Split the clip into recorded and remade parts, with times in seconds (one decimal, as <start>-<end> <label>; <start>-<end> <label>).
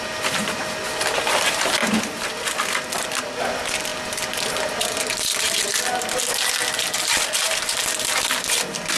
0.0-9.0 recorded